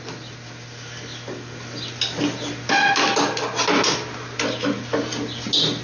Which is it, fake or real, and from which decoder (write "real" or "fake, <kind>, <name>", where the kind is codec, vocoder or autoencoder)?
real